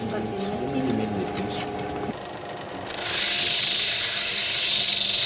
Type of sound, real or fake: real